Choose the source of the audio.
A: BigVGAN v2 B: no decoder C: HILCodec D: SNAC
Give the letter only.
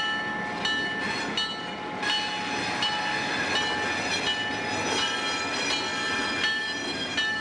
B